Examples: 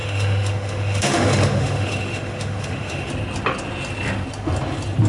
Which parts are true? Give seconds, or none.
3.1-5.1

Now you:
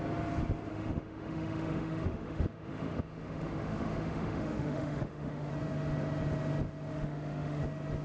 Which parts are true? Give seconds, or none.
0.0-0.7; 5.5-6.9; 7.6-8.0